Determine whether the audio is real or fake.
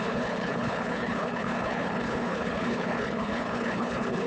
fake